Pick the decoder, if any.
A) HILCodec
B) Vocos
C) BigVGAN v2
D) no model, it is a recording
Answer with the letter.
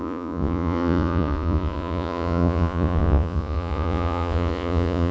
B